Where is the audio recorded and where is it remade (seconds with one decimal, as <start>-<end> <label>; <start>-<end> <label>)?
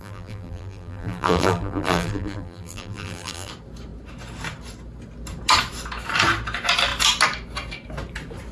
0.0-3.5 remade; 3.5-8.5 recorded